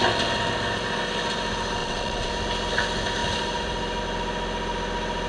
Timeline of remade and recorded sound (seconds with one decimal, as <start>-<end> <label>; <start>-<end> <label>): 0.0-1.8 recorded; 1.8-2.3 remade; 2.3-5.3 recorded

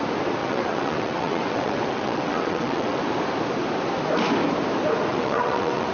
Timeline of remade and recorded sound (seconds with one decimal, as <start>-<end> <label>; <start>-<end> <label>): 0.0-0.4 recorded; 0.4-3.0 remade; 3.0-5.1 recorded; 5.1-5.9 remade

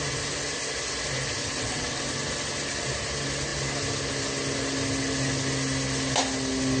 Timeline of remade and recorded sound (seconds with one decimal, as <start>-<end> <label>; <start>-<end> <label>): 0.0-1.4 recorded; 1.4-2.0 remade; 2.0-6.8 recorded

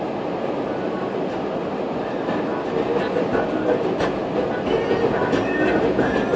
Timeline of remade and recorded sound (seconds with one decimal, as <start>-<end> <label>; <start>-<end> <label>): 0.0-6.4 recorded

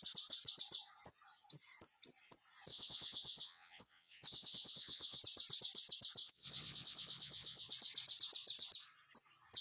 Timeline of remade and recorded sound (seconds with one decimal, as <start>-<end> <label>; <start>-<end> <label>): 0.0-2.7 recorded; 2.7-5.2 remade; 5.2-6.2 recorded; 6.2-7.7 remade; 7.7-9.6 recorded